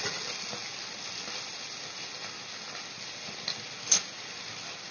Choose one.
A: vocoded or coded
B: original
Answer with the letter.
B